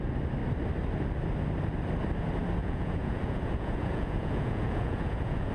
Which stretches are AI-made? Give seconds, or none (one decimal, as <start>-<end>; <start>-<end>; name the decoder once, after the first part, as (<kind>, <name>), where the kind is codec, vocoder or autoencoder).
2.6-5.5 (vocoder, Vocos)